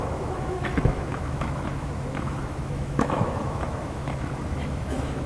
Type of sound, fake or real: fake